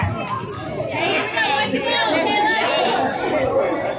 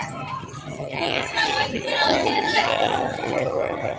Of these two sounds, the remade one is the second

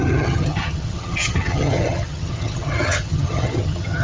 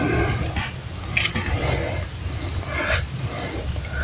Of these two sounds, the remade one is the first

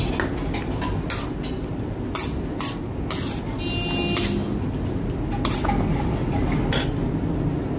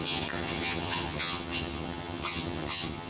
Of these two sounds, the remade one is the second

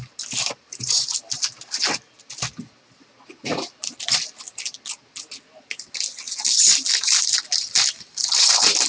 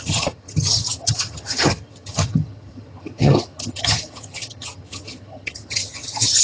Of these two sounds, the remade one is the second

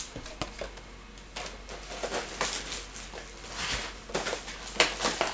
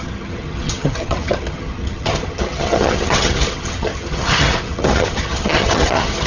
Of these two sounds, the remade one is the second